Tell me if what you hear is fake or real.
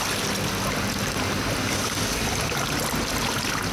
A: real